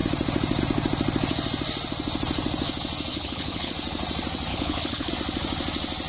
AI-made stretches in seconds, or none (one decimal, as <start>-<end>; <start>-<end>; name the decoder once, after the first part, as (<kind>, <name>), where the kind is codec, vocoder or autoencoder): 3.1-3.7 (codec, HILCodec); 4.5-5.1